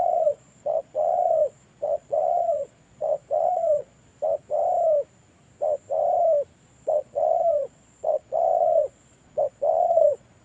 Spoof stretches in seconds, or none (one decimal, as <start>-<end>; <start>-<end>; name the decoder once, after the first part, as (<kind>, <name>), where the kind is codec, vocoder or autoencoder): 0.0-4.1 (vocoder, Vocos); 6.6-10.4